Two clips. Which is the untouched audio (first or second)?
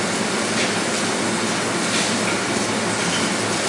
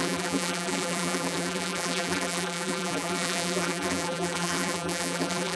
first